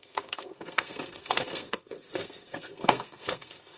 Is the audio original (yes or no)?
no